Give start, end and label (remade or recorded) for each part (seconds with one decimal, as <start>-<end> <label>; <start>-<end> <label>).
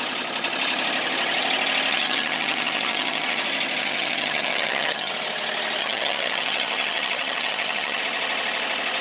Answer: 0.0-1.9 recorded; 1.9-3.4 remade; 3.4-3.8 recorded; 3.8-5.1 remade; 5.1-5.8 recorded; 5.8-8.0 remade; 8.0-9.0 recorded